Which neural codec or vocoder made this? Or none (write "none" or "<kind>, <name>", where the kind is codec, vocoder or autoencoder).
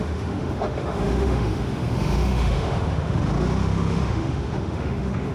autoencoder, DAC-VAE